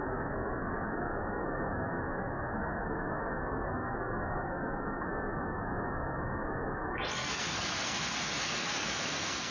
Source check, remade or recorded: remade